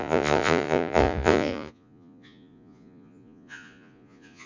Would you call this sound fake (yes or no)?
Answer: yes